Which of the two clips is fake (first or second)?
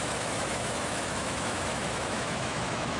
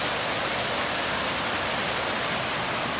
first